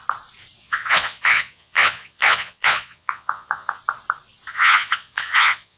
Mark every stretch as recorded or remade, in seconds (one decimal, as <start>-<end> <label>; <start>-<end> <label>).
0.0-0.6 recorded; 0.6-3.8 remade; 3.8-4.5 recorded; 4.5-5.8 remade